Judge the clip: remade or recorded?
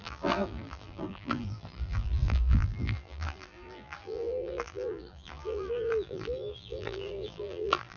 remade